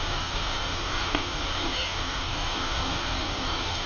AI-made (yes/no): yes